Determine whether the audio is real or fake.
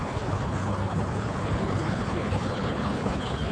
fake